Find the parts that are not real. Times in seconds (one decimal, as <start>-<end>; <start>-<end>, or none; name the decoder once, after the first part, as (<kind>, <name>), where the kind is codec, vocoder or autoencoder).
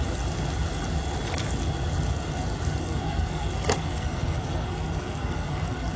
2.8-6.0 (codec, SNAC)